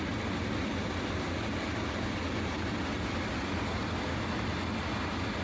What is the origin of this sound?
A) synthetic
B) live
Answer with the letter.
B